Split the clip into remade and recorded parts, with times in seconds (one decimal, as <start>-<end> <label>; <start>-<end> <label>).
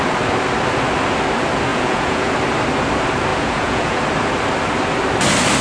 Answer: 0.0-1.7 recorded; 1.7-2.3 remade; 2.3-3.3 recorded; 3.3-4.0 remade; 4.0-5.6 recorded